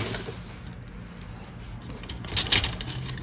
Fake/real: real